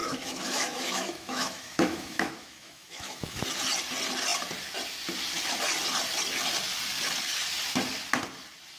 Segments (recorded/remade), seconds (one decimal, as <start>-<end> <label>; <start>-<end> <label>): 0.0-3.4 remade; 3.4-8.8 recorded